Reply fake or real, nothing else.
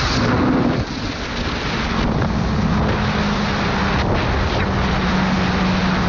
real